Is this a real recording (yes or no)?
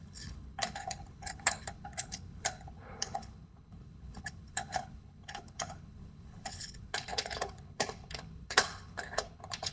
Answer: no